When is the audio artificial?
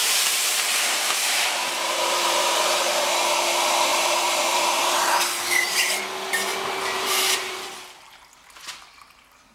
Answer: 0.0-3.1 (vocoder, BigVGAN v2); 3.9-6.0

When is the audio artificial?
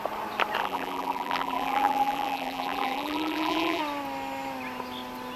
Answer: 0.6-3.8 (vocoder, BigVGAN v2)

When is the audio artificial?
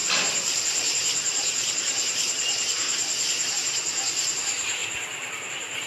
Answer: 0.0-4.8 (vocoder, BigVGAN v2); 5.5-5.9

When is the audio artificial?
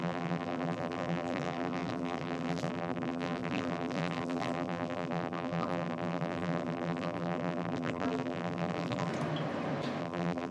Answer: 0.0-9.1 (vocoder, BigVGAN v2); 10.0-10.5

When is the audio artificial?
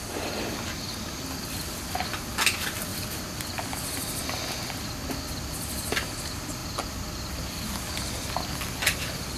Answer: 2.9-5.9 (vocoder, BigVGAN v2)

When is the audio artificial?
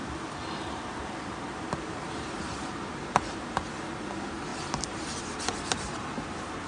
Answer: 0.0-3.7 (vocoder, BigVGAN v2); 4.5-5.4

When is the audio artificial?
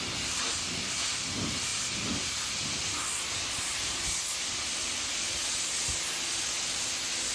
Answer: none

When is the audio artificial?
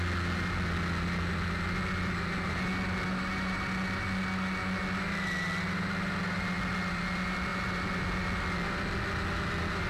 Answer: none